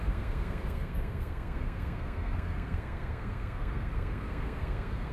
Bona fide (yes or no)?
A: no